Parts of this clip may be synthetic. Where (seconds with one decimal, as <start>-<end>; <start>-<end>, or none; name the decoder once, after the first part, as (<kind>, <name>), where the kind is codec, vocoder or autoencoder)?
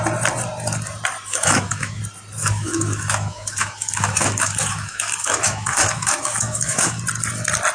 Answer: 1.3-2.0 (autoencoder, DAC-VAE); 2.4-7.0